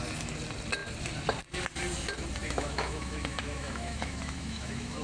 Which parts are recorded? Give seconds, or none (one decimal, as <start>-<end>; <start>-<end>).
0.0-2.4

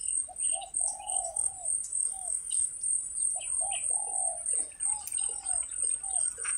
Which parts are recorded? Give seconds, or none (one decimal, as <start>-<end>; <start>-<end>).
0.0-0.9; 1.5-2.0; 2.7-6.6